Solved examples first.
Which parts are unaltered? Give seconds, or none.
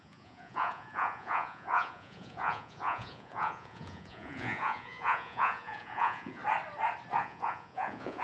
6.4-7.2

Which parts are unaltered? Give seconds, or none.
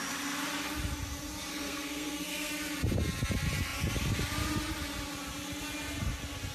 0.0-1.5; 2.5-6.5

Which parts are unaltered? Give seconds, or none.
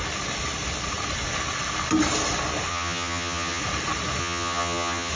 0.0-2.7; 3.6-4.2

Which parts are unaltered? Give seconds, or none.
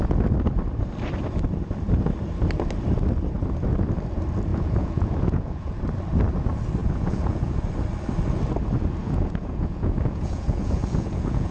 0.0-4.5; 5.8-6.8; 7.6-9.0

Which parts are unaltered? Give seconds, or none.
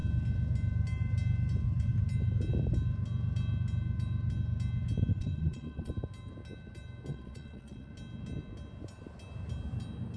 0.0-5.1; 5.9-7.1; 7.9-10.2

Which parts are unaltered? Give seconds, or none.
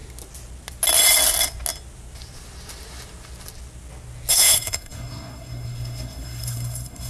0.0-4.3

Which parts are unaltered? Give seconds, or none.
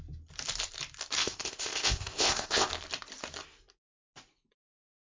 0.0-1.2; 2.7-5.0